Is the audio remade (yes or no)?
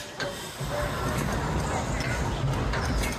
no